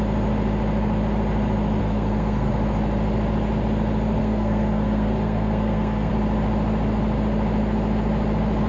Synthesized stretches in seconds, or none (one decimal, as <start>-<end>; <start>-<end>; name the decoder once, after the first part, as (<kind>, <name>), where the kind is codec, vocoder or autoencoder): 1.8-2.5 (codec, SNAC); 4.2-6.1